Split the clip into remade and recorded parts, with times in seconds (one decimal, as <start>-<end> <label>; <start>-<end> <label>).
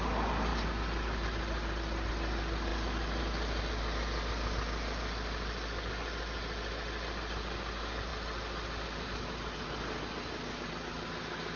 0.0-11.6 recorded